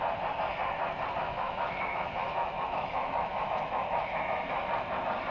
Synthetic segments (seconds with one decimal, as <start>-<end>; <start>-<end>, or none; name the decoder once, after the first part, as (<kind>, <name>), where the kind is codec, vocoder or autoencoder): 1.2-4.4 (autoencoder, DAC-VAE)